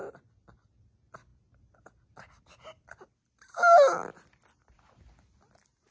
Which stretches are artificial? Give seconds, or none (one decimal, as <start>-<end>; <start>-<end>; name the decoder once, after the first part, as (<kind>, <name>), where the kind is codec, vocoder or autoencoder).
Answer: none